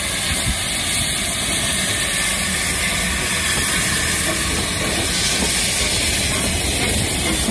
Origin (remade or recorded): recorded